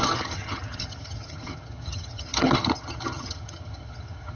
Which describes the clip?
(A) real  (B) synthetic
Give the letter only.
B